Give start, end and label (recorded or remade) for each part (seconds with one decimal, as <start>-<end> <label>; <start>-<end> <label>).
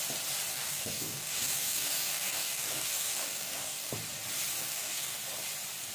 0.0-0.5 recorded; 0.5-3.9 remade; 3.9-4.6 recorded; 4.6-5.2 remade; 5.2-5.9 recorded